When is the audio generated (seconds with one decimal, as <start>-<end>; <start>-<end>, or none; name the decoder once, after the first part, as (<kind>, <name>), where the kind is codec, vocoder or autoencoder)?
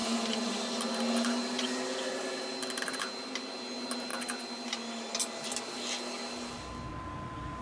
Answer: none